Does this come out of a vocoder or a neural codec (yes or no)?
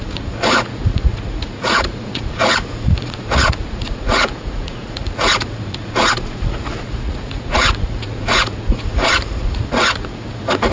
yes